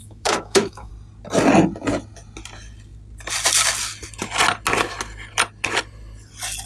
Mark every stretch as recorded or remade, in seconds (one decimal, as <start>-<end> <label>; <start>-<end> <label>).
0.0-0.9 remade; 0.9-6.7 recorded